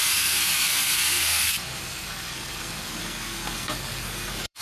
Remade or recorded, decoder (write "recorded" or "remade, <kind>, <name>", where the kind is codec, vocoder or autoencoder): remade, codec, SNAC